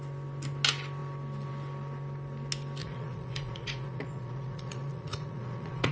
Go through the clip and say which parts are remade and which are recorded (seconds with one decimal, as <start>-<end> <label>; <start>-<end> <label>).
0.0-2.8 recorded; 2.8-5.9 remade